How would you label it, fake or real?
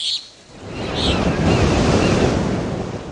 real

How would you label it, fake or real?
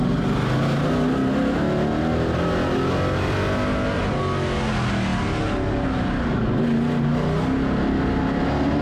real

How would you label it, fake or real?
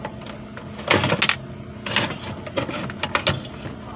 real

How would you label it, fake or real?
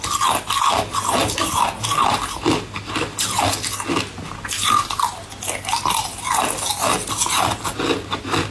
real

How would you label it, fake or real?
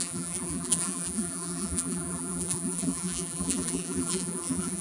fake